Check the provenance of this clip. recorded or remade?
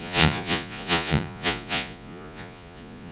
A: remade